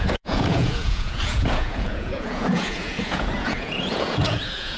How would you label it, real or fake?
fake